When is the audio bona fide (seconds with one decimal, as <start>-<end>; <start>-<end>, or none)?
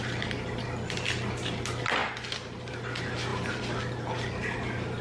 0.0-5.0